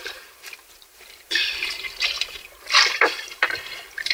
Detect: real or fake fake